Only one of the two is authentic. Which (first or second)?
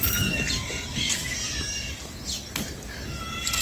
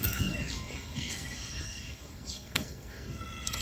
first